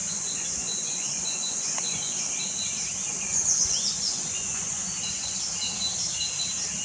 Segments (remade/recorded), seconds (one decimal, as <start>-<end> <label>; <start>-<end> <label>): 0.0-2.1 remade; 2.1-3.3 recorded; 3.3-5.4 remade; 5.4-6.8 recorded